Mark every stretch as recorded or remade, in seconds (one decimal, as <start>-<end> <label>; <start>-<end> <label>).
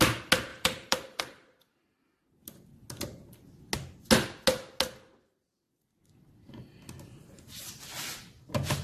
0.0-0.5 recorded; 0.5-1.2 remade; 1.2-8.8 recorded